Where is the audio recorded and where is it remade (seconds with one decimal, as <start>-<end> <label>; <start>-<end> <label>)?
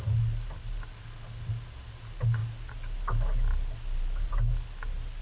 0.0-5.2 recorded